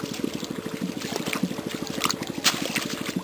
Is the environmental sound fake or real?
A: real